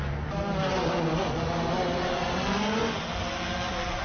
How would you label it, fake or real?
real